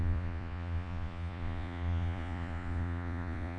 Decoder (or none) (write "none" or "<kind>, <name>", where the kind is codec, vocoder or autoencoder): vocoder, Vocos